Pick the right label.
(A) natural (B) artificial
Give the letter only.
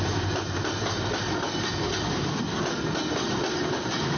A